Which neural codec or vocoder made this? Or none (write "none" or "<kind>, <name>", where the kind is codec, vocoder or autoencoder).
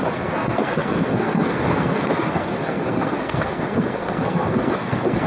codec, SNAC